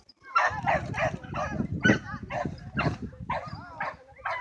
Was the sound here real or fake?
real